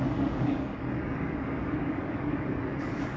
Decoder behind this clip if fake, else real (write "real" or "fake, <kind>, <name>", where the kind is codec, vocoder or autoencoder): fake, codec, DAC